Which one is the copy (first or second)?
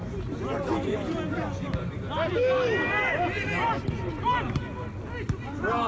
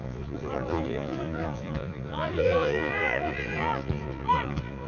second